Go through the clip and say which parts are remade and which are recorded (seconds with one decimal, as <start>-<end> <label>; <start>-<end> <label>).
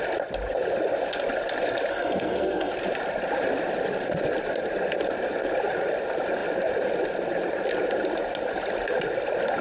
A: 0.0-1.9 recorded; 1.9-2.7 remade; 2.7-9.6 recorded